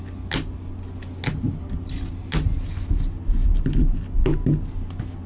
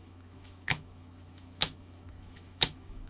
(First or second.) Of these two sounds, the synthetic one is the second